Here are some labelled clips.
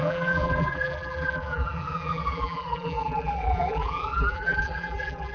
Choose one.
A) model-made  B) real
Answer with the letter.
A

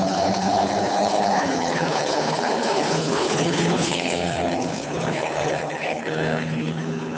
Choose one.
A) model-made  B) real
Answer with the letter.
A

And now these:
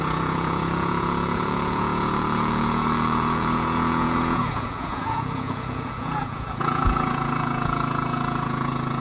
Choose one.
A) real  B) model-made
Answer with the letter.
B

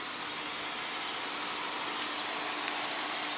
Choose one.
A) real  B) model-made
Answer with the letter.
A